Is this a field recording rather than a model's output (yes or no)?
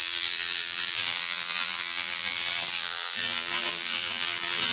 no